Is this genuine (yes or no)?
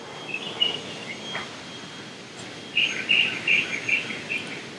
yes